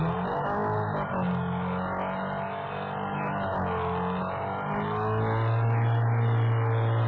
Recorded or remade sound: recorded